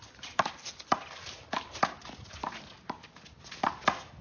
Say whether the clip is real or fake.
real